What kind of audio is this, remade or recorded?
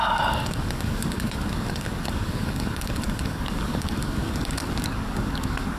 remade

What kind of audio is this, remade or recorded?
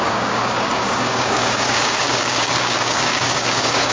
remade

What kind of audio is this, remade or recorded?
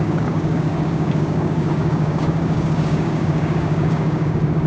remade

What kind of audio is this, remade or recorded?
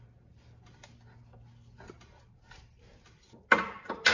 recorded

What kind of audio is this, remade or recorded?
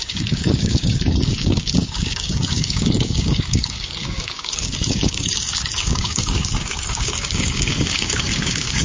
remade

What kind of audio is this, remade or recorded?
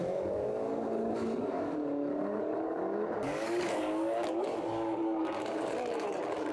remade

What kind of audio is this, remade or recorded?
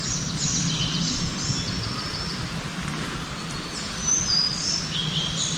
recorded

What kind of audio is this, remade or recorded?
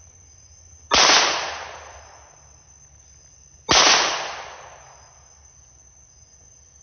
recorded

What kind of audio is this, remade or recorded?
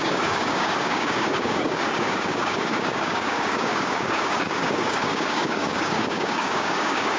remade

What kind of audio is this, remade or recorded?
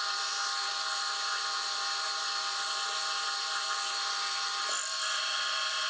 recorded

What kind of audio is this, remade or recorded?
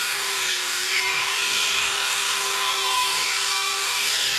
remade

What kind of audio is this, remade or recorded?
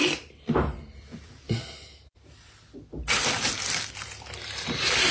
recorded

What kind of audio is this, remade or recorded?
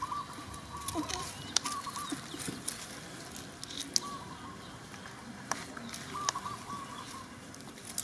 recorded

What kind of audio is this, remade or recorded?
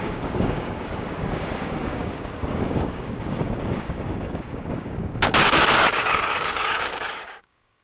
remade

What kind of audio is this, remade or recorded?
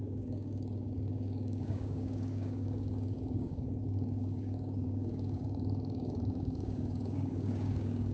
remade